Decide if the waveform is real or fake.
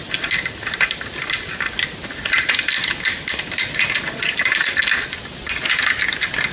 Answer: real